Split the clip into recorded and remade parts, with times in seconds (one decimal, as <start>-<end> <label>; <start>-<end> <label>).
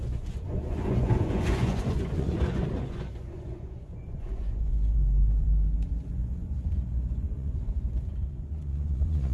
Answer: 0.0-9.3 remade